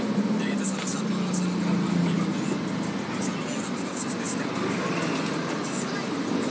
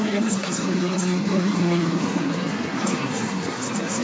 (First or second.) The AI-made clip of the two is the second